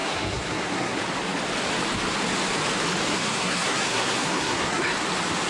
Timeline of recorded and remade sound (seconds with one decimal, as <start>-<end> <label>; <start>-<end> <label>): 0.0-1.0 remade; 1.0-3.1 recorded; 3.1-4.8 remade; 4.8-5.5 recorded